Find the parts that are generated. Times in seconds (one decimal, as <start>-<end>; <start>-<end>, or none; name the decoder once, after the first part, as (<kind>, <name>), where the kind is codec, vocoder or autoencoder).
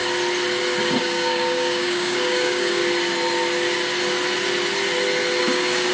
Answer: 1.0-2.8 (codec, DAC); 5.4-5.9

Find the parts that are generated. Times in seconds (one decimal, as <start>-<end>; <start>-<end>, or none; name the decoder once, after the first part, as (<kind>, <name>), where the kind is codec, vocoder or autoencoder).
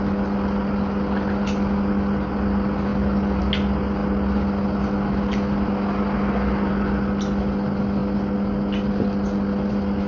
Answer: none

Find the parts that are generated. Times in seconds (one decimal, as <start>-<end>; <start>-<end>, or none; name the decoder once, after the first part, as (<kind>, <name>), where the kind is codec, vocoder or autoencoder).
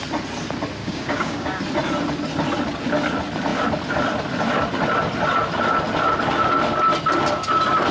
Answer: 0.8-1.6 (codec, DAC)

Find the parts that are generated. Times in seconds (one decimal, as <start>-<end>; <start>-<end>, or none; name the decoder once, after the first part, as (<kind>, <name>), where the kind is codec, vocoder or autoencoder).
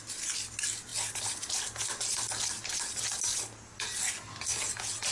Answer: none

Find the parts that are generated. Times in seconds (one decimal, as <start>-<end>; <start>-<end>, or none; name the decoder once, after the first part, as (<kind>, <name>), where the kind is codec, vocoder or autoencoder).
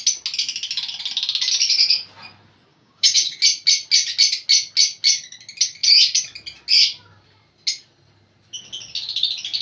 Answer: 2.7-3.4 (codec, DAC)